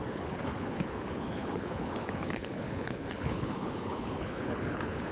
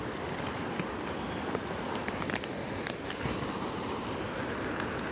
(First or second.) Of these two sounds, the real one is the second